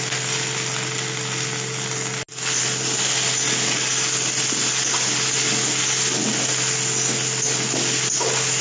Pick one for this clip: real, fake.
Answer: real